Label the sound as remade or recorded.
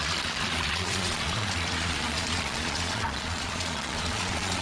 remade